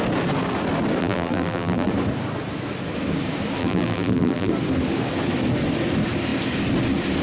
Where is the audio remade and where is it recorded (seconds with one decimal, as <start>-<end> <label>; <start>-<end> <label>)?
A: 0.0-1.0 recorded; 1.0-1.9 remade; 1.9-3.6 recorded; 3.6-4.5 remade; 4.5-7.2 recorded